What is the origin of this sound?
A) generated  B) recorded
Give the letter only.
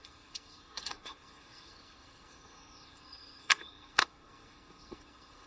A